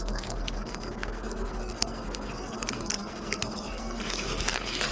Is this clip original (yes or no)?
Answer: no